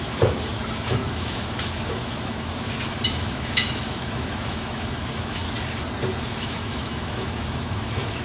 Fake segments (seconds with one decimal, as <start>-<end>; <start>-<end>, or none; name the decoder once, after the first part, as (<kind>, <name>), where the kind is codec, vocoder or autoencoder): 0.0-5.4 (autoencoder, DAC-VAE); 6.2-8.2